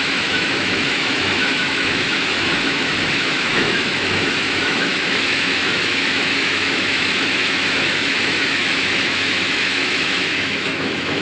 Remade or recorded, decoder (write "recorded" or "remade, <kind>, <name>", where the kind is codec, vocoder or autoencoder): remade, autoencoder, DAC-VAE